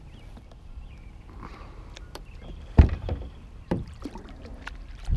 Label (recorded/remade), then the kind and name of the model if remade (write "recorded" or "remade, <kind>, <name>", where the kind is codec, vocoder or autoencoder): remade, vocoder, BigVGAN v2